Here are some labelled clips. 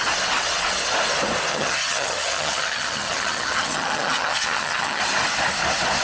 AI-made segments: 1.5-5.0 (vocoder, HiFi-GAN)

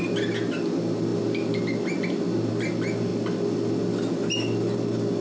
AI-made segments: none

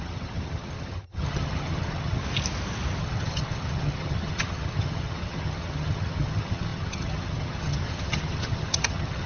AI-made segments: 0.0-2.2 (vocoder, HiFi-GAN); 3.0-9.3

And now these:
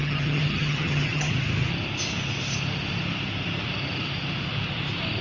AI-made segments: 0.0-1.3 (vocoder, HiFi-GAN)

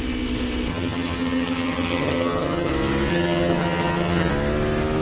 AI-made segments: 0.7-2.7 (vocoder, HiFi-GAN); 3.1-4.3